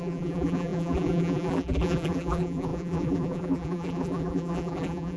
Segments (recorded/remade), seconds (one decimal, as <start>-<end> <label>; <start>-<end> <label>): 0.0-5.2 remade